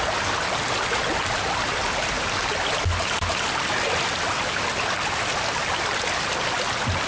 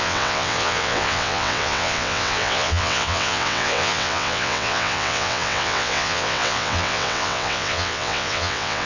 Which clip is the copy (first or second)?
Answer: second